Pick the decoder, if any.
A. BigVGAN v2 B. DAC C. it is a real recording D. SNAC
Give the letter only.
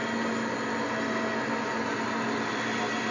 C